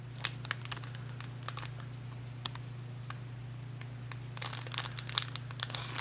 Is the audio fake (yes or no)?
no